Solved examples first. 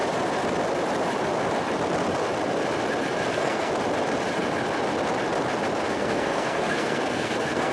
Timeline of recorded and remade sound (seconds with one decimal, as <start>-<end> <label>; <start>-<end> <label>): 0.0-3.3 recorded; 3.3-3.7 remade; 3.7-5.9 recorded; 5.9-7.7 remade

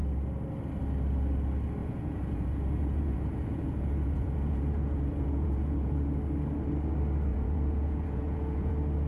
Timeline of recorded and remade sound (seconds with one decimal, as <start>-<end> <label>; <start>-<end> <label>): 0.0-1.8 recorded; 1.8-6.0 remade; 6.0-7.3 recorded; 7.3-8.7 remade; 8.7-9.1 recorded

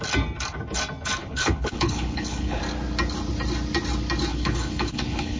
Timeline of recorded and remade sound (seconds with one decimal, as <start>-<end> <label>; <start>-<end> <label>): 0.0-1.2 recorded; 1.2-2.6 remade; 2.6-4.3 recorded; 4.3-5.4 remade

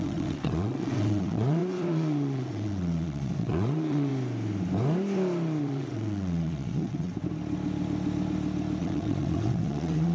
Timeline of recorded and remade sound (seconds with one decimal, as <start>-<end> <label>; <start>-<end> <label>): 0.0-4.1 remade; 4.1-5.6 recorded; 5.6-7.1 remade; 7.1-8.8 recorded; 8.8-10.1 remade

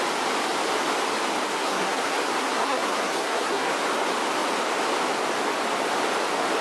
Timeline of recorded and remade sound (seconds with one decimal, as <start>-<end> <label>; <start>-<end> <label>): 0.0-1.5 recorded; 1.5-3.7 remade; 3.7-6.6 recorded